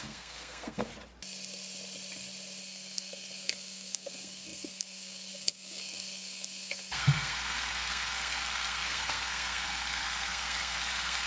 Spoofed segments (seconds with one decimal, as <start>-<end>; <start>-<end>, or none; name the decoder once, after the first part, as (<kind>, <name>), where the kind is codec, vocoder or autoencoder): 0.0-0.9 (codec, SNAC); 2.6-11.3

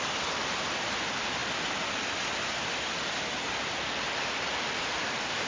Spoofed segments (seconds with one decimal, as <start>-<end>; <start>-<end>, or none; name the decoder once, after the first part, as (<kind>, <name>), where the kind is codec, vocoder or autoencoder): 3.4-5.5 (vocoder, BigVGAN v2)

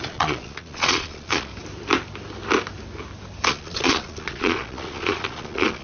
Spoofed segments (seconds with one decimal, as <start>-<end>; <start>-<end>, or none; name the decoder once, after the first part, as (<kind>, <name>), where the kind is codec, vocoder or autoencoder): 0.0-1.5 (vocoder, Vocos); 3.5-5.8